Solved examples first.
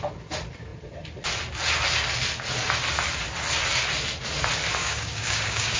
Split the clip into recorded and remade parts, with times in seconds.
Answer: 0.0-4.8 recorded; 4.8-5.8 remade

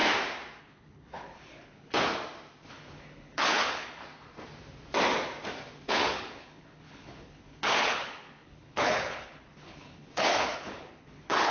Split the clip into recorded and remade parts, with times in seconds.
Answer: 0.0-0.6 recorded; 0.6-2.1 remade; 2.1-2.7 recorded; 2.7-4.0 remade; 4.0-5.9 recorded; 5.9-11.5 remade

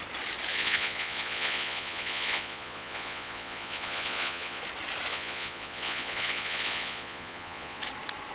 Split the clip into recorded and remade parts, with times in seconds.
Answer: 0.0-0.5 recorded; 0.5-4.6 remade; 4.6-5.1 recorded; 5.1-7.8 remade; 7.8-8.3 recorded

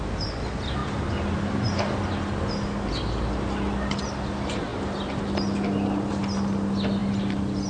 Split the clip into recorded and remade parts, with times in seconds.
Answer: 0.0-7.7 recorded

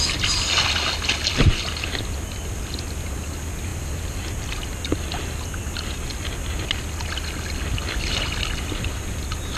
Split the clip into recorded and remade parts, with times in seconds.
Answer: 0.0-9.6 recorded

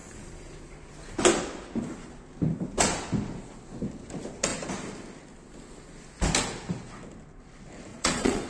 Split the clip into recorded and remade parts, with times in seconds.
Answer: 0.0-7.9 recorded; 7.9-8.5 remade

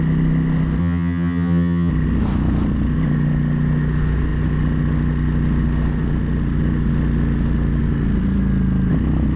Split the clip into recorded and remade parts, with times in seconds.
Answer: 0.0-0.8 recorded; 0.8-1.9 remade; 1.9-9.4 recorded